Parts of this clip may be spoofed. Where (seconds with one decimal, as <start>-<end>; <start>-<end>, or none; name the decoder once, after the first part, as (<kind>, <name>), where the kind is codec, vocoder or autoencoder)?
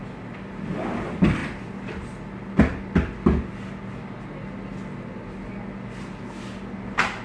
1.4-2.3 (vocoder, BigVGAN v2)